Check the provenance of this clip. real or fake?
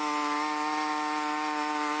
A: real